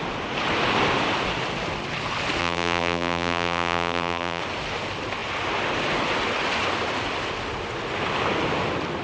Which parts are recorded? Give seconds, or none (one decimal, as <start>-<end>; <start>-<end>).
0.0-2.4; 4.4-9.0